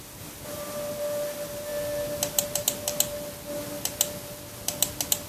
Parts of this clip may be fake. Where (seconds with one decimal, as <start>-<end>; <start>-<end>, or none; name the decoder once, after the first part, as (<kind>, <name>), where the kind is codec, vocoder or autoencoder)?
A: 0.0-1.7 (vocoder, BigVGAN v2)